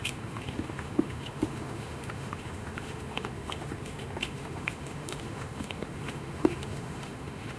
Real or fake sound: fake